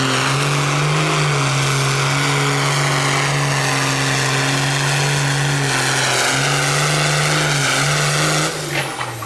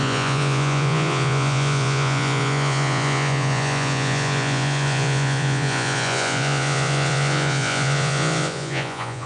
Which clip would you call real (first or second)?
first